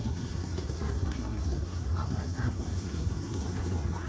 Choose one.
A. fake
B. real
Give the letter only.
A